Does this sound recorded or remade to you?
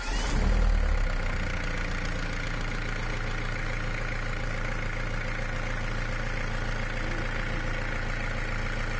recorded